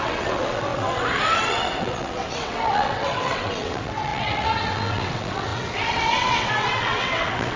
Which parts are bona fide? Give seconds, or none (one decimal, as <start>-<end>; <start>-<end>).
none